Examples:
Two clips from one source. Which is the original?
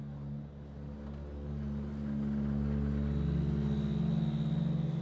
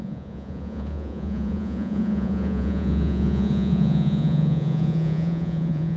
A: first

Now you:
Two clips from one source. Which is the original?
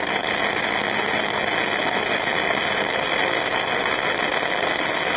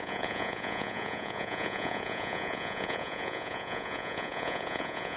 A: first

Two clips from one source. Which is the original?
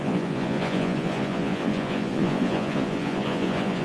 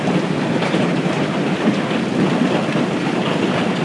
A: second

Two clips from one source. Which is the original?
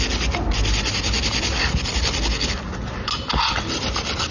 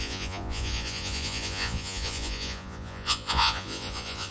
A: first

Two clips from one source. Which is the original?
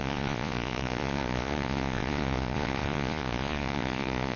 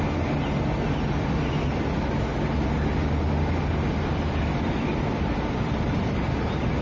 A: second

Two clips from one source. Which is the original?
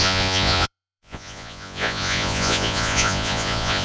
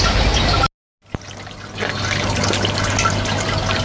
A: second